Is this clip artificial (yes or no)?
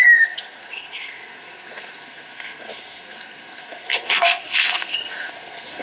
yes